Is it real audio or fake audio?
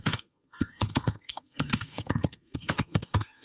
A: fake